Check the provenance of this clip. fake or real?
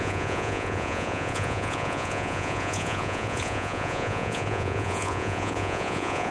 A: fake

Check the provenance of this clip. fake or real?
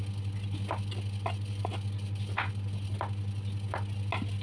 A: real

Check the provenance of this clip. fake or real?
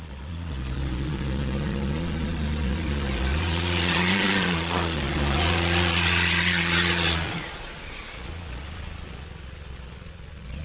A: fake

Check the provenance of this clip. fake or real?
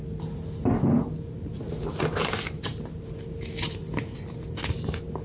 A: real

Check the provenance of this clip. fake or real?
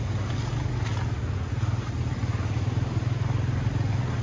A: real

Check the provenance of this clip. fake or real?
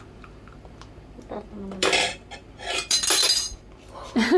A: real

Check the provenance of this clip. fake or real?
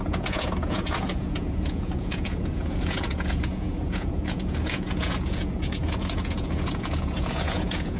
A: fake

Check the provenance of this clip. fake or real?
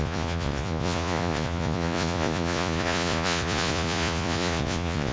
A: fake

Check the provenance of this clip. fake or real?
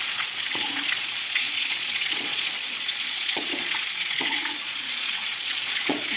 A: fake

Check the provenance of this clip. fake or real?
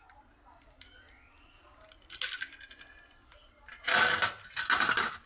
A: real